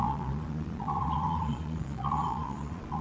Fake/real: fake